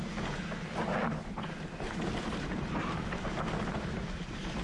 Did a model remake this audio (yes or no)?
no